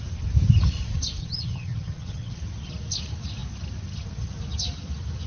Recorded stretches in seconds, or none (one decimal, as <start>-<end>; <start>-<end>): 0.0-1.2; 2.3-5.3